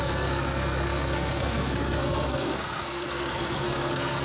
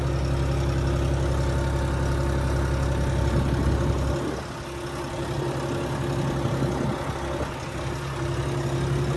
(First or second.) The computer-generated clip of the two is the first